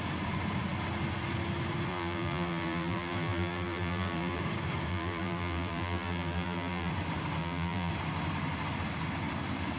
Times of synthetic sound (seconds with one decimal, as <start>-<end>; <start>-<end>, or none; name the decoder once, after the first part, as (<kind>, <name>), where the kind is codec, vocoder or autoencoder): 1.9-4.4 (vocoder, BigVGAN v2); 4.9-6.9; 7.4-7.9